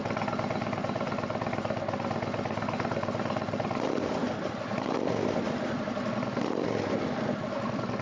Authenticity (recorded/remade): remade